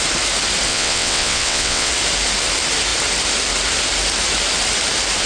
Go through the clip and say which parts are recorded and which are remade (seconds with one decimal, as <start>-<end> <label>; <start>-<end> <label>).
0.0-0.7 recorded; 0.7-1.9 remade; 1.9-5.3 recorded